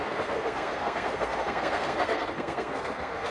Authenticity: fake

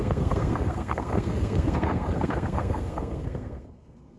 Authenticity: fake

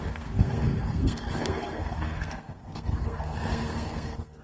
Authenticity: fake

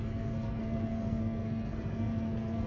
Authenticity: fake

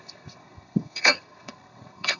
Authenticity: fake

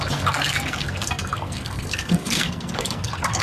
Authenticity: fake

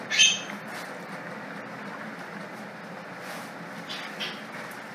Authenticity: real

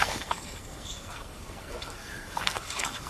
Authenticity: fake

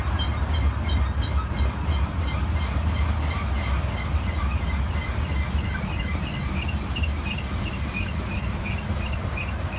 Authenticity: real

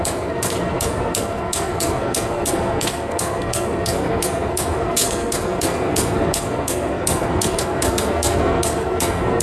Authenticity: fake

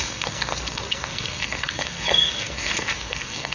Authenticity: fake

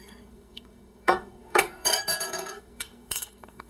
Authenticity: fake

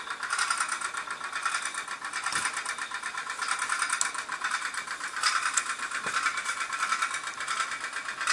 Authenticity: real